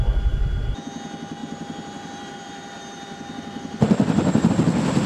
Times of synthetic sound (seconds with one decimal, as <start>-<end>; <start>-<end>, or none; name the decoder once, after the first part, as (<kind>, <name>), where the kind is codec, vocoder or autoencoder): 1.4-4.5 (vocoder, BigVGAN v2)